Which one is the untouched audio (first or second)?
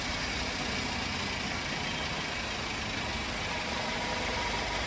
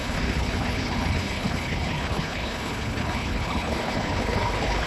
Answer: first